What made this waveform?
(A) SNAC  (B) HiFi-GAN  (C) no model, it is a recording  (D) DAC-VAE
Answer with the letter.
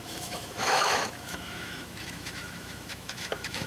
D